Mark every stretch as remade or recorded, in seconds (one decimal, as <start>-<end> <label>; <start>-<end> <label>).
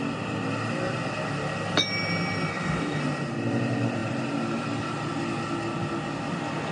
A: 0.0-2.5 recorded; 2.5-3.0 remade; 3.0-6.7 recorded